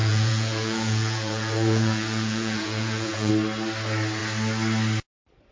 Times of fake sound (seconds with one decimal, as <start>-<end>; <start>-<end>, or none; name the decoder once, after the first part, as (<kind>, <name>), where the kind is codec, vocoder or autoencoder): 0.0-3.3 (vocoder, Vocos)